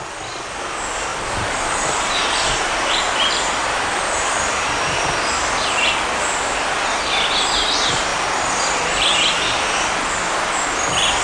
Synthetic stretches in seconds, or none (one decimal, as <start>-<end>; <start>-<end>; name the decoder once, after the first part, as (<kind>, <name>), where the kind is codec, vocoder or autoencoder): 1.1-5.9 (vocoder, BigVGAN v2)